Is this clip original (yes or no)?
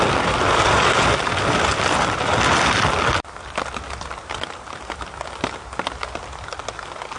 yes